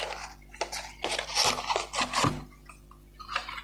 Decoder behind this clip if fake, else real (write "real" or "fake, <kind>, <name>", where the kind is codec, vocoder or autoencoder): real